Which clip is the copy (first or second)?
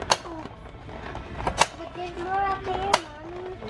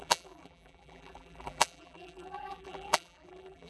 second